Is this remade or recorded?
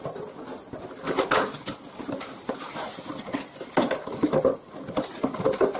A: recorded